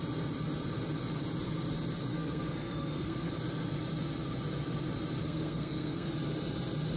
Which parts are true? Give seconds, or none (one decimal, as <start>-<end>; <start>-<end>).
0.0-2.1; 3.3-5.2; 6.1-7.0